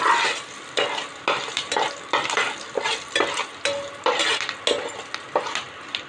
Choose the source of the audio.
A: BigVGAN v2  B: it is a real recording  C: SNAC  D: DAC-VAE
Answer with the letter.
B